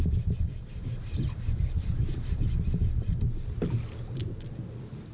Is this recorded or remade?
recorded